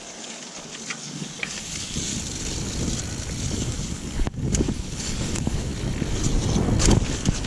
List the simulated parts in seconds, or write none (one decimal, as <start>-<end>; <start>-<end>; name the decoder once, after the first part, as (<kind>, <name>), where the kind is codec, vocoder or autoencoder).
0.0-2.1 (codec, DAC); 3.5-5.7; 7.1-7.5

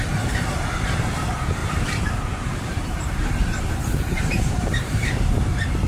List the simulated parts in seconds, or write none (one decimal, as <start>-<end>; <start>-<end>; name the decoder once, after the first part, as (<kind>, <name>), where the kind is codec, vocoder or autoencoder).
1.6-5.1 (vocoder, BigVGAN v2)